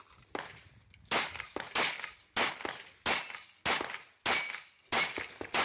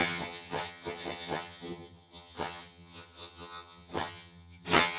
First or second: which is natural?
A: first